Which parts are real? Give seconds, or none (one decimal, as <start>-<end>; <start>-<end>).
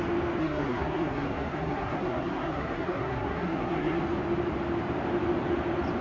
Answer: 0.0-0.4; 4.0-6.0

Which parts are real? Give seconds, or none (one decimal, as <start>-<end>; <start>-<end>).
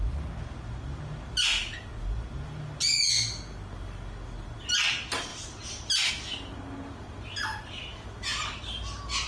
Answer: 0.0-9.3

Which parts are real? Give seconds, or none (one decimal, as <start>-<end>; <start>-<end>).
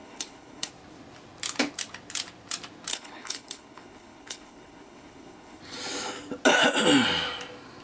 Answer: 0.7-2.9; 5.6-7.8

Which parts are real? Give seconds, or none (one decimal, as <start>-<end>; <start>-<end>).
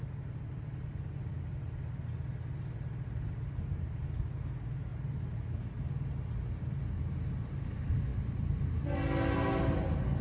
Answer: 0.0-8.1; 8.8-10.2